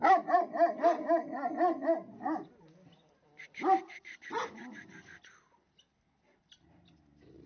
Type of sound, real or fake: real